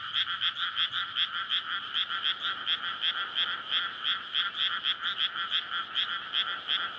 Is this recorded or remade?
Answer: recorded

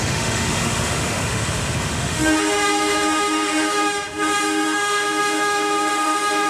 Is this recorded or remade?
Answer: remade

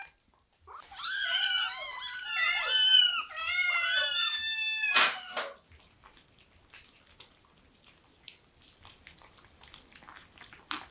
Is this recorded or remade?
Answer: recorded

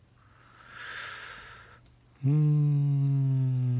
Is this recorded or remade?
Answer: recorded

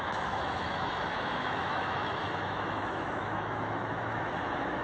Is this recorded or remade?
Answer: remade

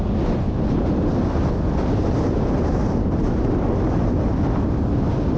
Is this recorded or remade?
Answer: recorded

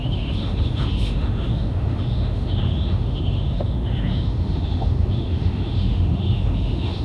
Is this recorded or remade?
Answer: remade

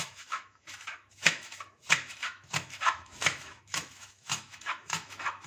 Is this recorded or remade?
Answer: remade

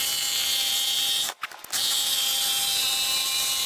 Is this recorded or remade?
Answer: recorded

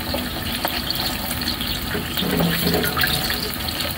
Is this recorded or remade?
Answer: recorded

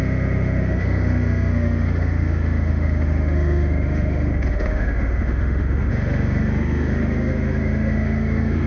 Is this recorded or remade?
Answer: remade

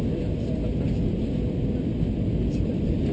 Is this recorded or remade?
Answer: recorded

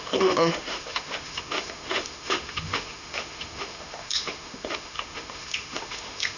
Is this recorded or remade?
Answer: remade